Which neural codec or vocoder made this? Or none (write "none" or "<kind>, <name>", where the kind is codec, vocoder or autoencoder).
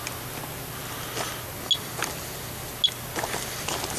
none